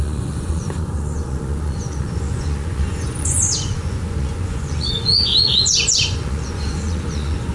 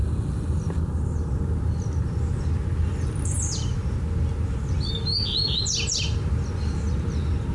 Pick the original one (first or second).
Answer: second